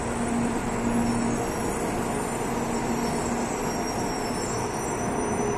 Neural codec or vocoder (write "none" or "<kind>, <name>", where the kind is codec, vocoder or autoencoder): none